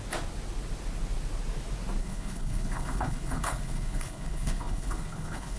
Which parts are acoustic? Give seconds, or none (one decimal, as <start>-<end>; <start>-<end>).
0.0-2.0